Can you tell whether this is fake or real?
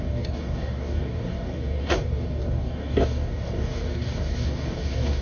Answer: fake